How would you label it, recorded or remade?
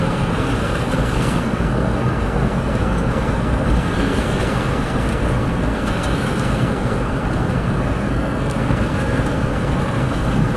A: remade